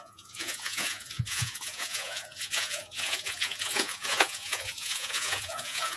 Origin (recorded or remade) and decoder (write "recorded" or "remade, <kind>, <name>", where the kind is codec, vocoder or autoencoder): remade, vocoder, Vocos